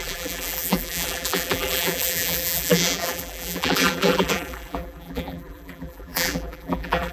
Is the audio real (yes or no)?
no